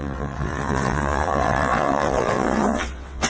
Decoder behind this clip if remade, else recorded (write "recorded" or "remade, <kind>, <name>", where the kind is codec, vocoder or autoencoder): remade, vocoder, WaveNeXt